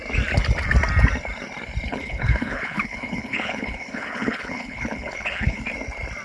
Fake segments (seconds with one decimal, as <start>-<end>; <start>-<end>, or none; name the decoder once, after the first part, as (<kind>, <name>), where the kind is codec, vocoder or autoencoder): 1.9-5.6 (codec, HILCodec)